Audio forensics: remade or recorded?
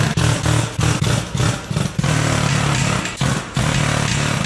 recorded